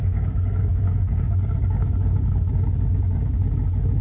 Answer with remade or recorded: remade